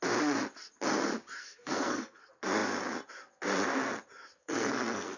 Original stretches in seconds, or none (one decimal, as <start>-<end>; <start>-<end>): 0.0-1.4; 2.2-4.4